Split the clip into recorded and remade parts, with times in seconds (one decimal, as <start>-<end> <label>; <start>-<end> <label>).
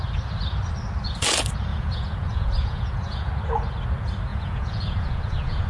0.0-1.7 recorded; 1.7-3.3 remade; 3.3-4.3 recorded; 4.3-5.7 remade